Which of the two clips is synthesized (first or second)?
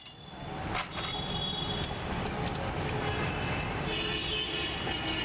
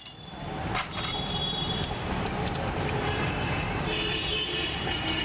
second